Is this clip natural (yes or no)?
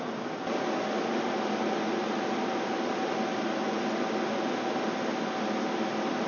yes